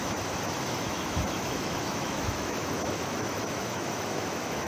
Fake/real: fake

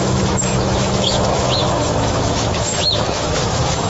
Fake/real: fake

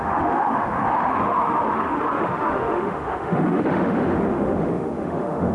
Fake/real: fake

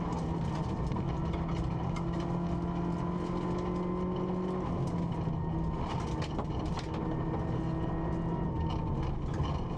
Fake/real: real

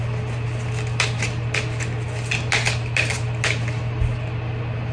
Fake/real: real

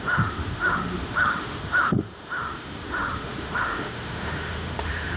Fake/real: fake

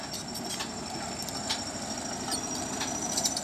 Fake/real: real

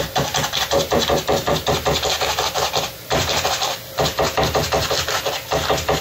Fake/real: real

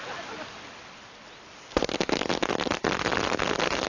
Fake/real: real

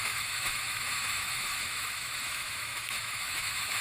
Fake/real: fake